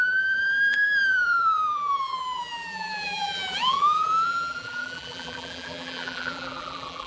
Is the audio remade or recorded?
remade